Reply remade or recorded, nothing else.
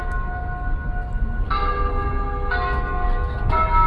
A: recorded